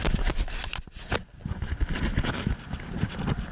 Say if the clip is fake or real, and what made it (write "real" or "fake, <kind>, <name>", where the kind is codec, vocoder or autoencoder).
real